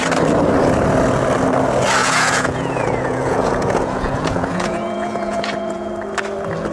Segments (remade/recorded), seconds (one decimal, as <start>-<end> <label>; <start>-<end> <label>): 0.0-2.0 recorded; 2.0-5.9 remade; 5.9-6.7 recorded